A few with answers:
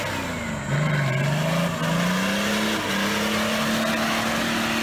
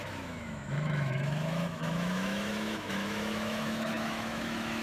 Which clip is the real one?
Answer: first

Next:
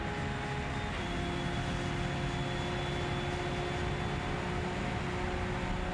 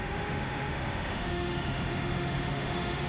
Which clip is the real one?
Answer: first